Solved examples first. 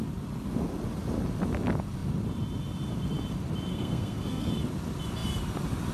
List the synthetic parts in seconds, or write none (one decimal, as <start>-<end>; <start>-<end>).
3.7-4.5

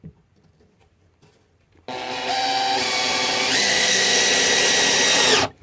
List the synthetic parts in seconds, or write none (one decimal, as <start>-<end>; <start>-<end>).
3.7-4.2

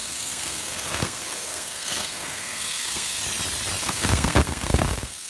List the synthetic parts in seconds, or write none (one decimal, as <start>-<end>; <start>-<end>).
0.0-3.2; 3.8-5.3

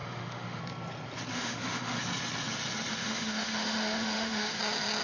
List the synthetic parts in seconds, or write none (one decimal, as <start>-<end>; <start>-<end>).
0.0-0.6; 1.3-2.0; 3.0-4.6